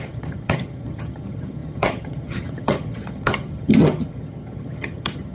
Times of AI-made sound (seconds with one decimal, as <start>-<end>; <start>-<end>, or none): 0.0-5.3